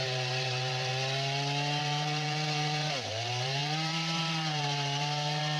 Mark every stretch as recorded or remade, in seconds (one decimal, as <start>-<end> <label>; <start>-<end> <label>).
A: 0.0-0.9 remade; 0.9-1.8 recorded; 1.8-5.6 remade